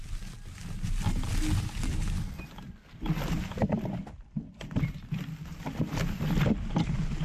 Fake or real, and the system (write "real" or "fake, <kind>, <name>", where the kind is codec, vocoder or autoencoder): real